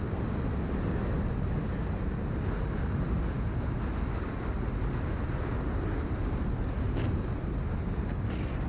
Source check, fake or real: real